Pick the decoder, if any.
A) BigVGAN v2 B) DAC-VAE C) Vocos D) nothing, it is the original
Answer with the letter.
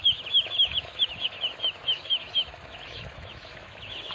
B